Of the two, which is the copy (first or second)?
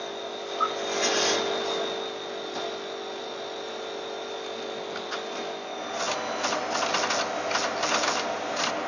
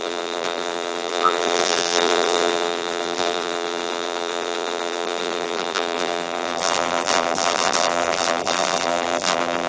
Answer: second